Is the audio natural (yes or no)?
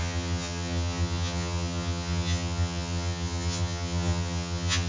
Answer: no